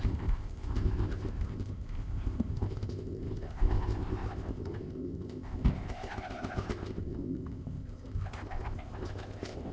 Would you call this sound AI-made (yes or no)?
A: yes